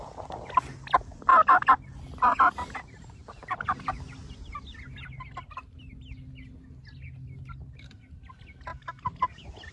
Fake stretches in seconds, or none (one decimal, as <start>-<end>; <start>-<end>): none